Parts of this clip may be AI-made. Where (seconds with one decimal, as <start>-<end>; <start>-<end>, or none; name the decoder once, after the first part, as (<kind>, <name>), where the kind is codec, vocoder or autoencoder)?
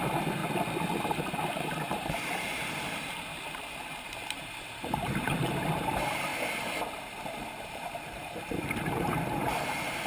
0.0-0.4 (vocoder, BigVGAN v2); 1.0-6.3; 6.9-10.1